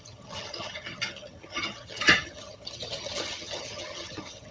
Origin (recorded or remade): remade